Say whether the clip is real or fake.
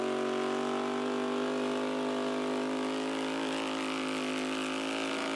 real